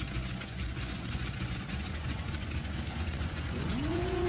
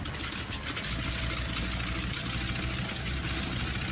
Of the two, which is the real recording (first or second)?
second